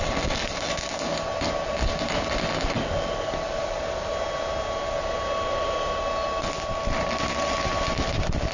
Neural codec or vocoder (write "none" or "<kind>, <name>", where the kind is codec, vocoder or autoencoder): none